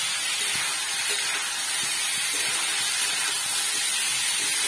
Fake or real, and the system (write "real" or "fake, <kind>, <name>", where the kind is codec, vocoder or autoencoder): real